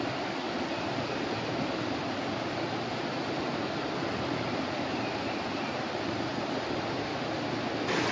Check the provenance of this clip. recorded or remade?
recorded